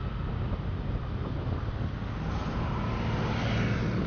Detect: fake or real real